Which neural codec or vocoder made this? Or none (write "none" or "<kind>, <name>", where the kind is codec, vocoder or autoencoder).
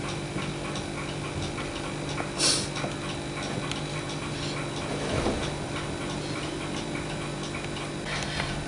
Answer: none